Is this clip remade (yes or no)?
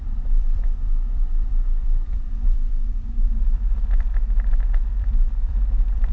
yes